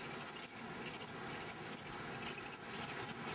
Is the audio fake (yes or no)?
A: no